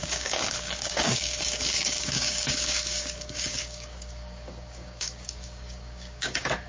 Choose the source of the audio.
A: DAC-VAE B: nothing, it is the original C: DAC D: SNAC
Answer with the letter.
C